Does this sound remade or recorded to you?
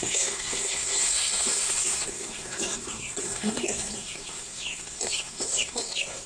remade